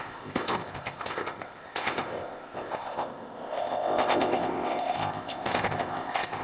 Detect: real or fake fake